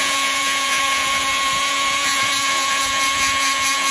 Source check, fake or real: fake